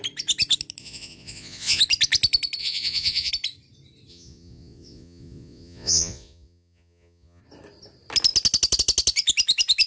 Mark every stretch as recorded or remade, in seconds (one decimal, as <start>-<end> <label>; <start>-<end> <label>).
0.0-0.8 recorded; 0.8-1.8 remade; 1.8-2.6 recorded; 2.6-3.3 remade; 3.3-4.1 recorded; 4.1-7.4 remade; 7.4-9.9 recorded